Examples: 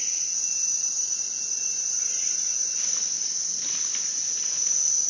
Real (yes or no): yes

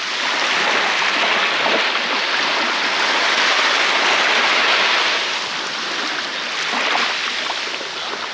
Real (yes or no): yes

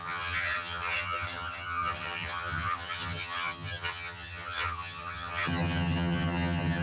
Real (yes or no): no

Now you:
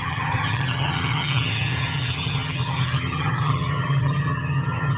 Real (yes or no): no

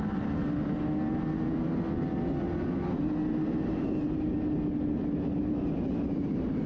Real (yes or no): yes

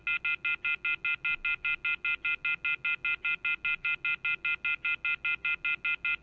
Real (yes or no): yes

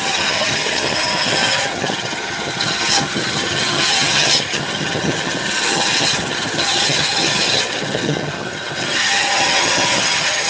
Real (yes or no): no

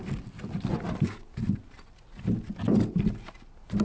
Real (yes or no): yes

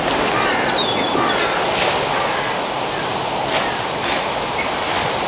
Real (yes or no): yes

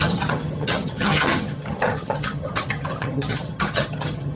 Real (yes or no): no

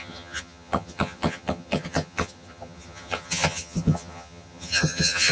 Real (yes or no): no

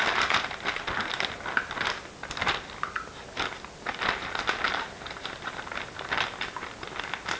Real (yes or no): yes